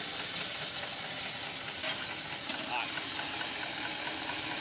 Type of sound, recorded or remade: recorded